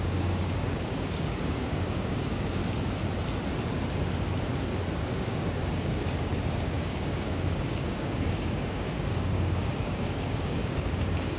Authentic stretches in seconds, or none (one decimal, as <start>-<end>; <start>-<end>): 2.6-5.0

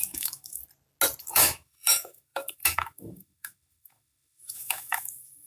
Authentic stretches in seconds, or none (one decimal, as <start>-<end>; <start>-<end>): 0.6-1.2

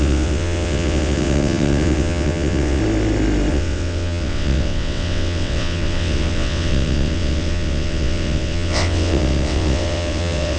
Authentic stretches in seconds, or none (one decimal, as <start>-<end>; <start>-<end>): 2.8-3.5

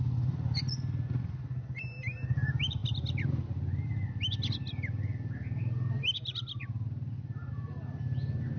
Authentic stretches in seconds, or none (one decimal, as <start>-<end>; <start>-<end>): 0.0-8.6

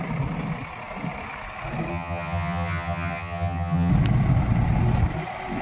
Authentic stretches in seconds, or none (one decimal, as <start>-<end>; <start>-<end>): 0.0-1.9; 3.9-5.6

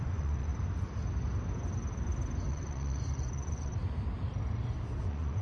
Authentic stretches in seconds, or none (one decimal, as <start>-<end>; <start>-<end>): 0.5-2.5; 3.7-5.0